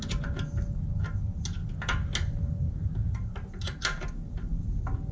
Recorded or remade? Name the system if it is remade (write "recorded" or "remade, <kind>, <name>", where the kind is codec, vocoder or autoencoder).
recorded